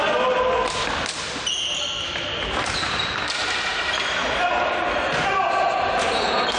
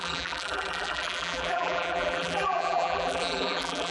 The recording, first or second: first